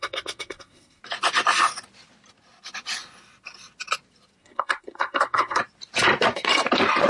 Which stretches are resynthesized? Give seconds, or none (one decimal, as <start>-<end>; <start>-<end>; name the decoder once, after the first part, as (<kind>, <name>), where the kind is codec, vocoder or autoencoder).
0.0-1.0 (codec, SNAC); 4.4-5.6